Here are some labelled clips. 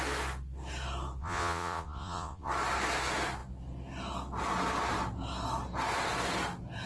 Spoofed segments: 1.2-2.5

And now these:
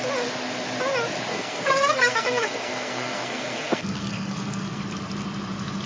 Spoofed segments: 1.3-4.8

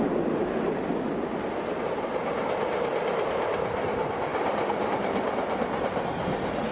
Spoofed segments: none

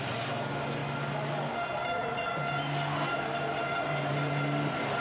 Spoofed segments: none

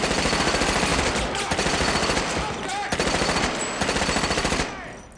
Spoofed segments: none

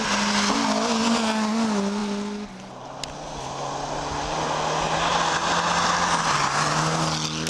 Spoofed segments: none